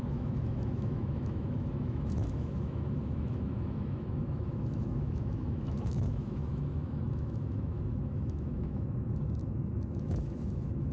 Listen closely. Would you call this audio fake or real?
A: fake